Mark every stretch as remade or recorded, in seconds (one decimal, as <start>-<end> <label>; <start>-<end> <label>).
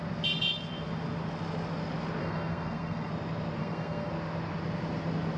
0.0-2.2 recorded; 2.2-3.1 remade; 3.1-3.6 recorded; 3.6-4.1 remade; 4.1-5.4 recorded